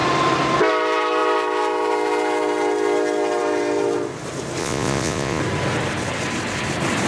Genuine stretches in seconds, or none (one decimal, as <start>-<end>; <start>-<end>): 0.0-4.6; 5.4-7.1